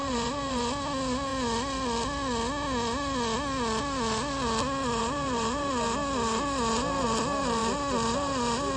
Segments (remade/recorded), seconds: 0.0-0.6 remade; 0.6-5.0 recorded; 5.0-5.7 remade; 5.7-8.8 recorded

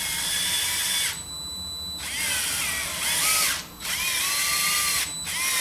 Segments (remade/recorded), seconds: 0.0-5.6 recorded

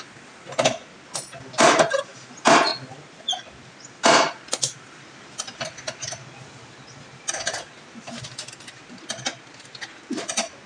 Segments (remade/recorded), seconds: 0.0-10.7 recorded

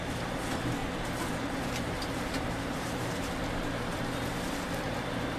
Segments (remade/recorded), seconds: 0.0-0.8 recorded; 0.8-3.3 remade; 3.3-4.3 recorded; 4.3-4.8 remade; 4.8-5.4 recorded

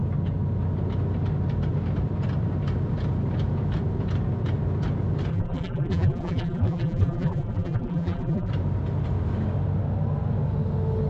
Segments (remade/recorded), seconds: 0.0-5.3 recorded; 5.3-8.5 remade; 8.5-11.1 recorded